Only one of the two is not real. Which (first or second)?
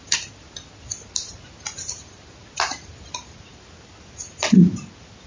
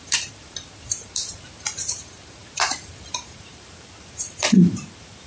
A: second